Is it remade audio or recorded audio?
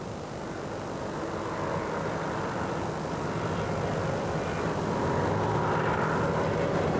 recorded